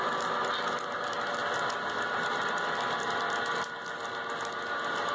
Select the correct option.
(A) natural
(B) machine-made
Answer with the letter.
A